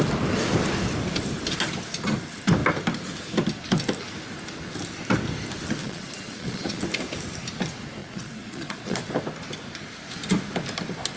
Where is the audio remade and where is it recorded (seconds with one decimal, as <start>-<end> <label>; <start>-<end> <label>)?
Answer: 0.0-5.8 recorded; 5.8-6.8 remade; 6.8-8.0 recorded; 8.0-9.0 remade; 9.0-11.2 recorded